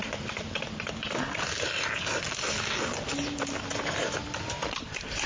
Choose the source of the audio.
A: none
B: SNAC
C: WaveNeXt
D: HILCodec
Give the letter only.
A